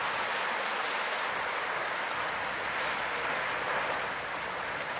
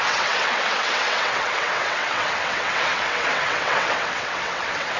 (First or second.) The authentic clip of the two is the first